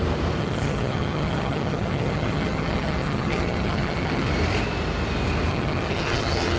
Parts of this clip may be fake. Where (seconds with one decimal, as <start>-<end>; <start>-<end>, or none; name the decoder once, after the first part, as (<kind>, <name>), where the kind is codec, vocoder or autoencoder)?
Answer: 0.4-4.3 (vocoder, HiFi-GAN); 5.5-6.6